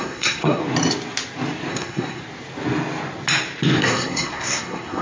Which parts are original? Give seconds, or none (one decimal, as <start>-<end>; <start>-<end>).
0.6-1.7; 2.2-3.8